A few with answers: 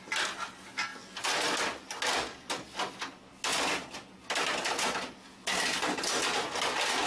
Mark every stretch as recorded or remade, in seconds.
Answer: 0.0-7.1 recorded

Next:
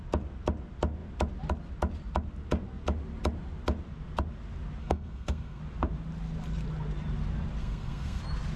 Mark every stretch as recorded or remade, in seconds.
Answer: 0.0-4.8 recorded; 4.8-5.6 remade; 5.6-7.6 recorded; 7.6-8.2 remade; 8.2-8.6 recorded

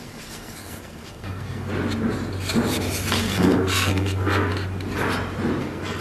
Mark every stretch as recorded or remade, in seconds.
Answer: 0.0-1.7 remade; 1.7-3.2 recorded; 3.2-4.5 remade; 4.5-5.6 recorded; 5.6-6.0 remade

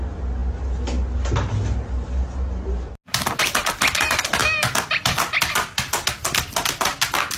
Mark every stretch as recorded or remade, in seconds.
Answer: 0.0-7.4 recorded